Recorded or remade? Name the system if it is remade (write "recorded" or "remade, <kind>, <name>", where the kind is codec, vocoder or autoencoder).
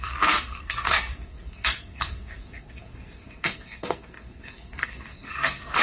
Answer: remade, codec, SNAC